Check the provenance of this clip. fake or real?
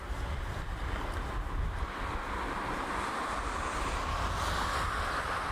real